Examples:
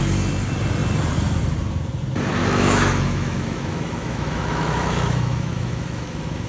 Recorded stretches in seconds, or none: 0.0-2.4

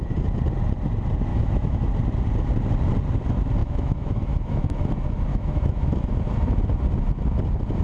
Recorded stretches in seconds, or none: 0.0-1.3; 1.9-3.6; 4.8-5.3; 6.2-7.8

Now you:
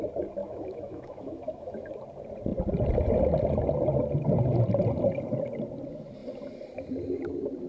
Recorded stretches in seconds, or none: 0.0-0.4; 1.9-7.7

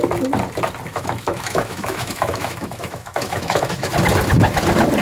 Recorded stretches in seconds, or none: 0.0-0.9; 3.9-5.0